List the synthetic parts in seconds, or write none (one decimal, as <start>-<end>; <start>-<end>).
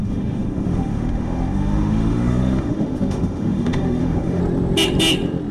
0.0-4.4